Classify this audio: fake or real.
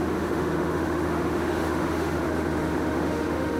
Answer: fake